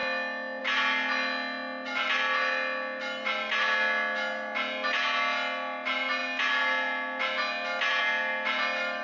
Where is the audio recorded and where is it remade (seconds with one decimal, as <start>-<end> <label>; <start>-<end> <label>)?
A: 0.0-9.0 recorded